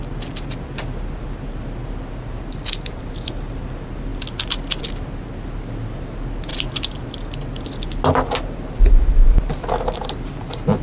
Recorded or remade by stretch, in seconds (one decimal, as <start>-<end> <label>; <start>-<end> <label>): 0.0-10.8 recorded